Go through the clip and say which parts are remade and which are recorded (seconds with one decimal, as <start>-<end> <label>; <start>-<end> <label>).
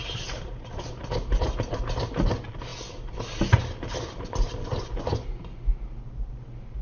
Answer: 0.0-1.0 remade; 1.0-6.8 recorded